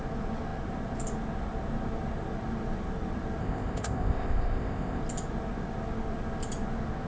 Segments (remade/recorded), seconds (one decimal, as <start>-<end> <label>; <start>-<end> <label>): 0.0-3.4 recorded; 3.4-5.0 remade; 5.0-7.1 recorded